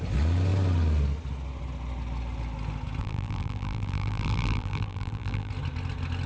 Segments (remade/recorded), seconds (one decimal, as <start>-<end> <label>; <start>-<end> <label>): 0.0-3.0 recorded; 3.0-5.5 remade; 5.5-6.3 recorded